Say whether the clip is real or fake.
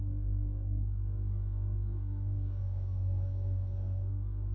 fake